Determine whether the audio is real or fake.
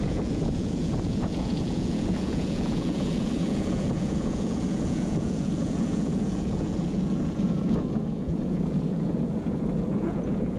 fake